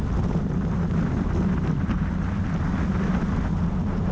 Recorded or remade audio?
recorded